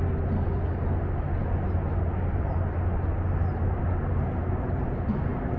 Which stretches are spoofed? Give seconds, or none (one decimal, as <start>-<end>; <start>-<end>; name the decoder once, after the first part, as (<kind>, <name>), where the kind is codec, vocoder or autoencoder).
none